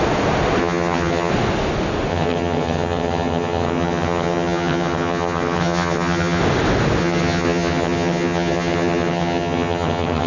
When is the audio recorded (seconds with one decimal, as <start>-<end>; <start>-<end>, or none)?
0.0-0.6; 1.3-2.1; 6.4-7.0